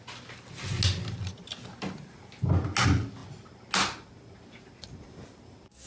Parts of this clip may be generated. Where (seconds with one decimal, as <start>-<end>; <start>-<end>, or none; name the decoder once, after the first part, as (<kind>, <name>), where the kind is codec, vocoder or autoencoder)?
none

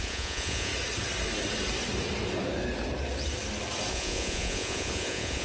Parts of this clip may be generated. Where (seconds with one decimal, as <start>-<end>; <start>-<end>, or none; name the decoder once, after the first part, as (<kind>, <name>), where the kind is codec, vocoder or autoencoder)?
0.0-0.7 (vocoder, Vocos); 3.9-5.4

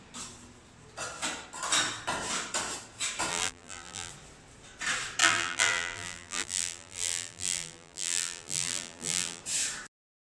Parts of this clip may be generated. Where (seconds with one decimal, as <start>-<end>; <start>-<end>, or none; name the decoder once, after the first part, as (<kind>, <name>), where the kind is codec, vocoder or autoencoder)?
3.3-4.1 (vocoder, BigVGAN v2); 5.2-9.4

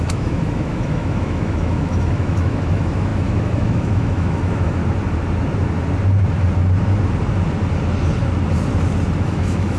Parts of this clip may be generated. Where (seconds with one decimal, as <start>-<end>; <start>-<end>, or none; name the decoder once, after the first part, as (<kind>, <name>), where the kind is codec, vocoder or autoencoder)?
0.0-4.8 (autoencoder, DAC-VAE); 9.2-9.8

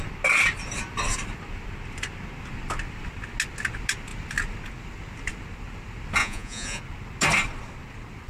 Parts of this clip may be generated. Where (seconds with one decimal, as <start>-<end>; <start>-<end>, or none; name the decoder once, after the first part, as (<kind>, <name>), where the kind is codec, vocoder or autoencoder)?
6.2-6.8 (vocoder, Vocos)